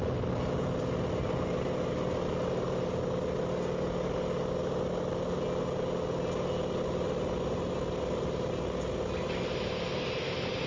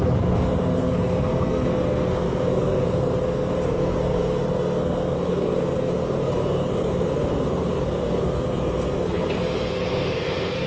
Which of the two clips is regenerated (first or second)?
second